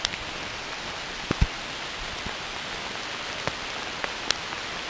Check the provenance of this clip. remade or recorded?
recorded